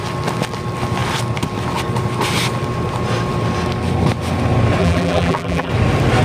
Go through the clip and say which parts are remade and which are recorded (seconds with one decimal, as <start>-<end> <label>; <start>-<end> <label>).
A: 0.0-4.8 recorded; 4.8-5.7 remade; 5.7-6.2 recorded